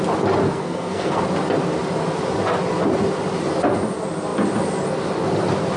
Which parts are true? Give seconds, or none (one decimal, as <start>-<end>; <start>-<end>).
0.0-0.4; 1.2-5.8